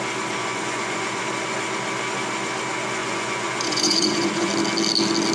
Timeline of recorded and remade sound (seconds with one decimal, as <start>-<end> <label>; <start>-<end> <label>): 0.0-0.4 recorded; 0.4-1.2 remade; 1.2-3.0 recorded; 3.0-4.5 remade; 4.5-5.3 recorded